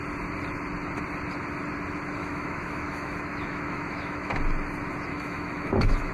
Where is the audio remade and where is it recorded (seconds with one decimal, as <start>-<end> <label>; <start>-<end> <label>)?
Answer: 0.0-2.2 recorded; 2.2-4.3 remade; 4.3-5.1 recorded; 5.1-6.1 remade